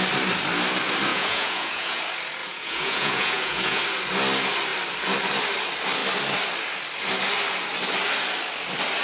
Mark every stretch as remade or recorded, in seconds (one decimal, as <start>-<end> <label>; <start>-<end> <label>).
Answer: 0.0-1.1 recorded; 1.1-2.0 remade; 2.0-2.4 recorded; 2.4-3.8 remade; 3.8-9.0 recorded